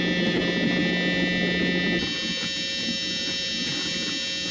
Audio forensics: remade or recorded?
recorded